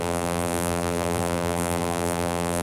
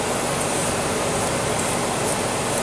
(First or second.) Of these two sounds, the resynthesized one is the first